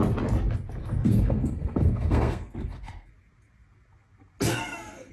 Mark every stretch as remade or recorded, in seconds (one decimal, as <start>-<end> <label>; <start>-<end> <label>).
0.0-0.8 recorded; 0.8-3.1 remade; 3.1-4.5 recorded; 4.5-5.1 remade